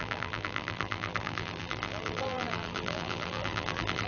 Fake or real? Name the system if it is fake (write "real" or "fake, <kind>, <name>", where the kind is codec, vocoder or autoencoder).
fake, vocoder, BigVGAN v2